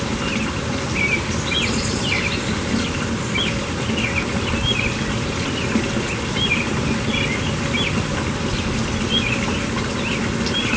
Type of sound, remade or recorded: recorded